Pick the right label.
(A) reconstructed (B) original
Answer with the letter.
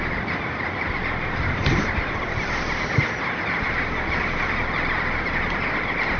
B